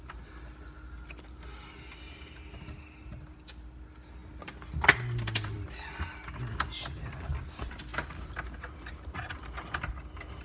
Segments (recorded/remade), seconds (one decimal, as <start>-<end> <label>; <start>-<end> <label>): 0.0-10.4 recorded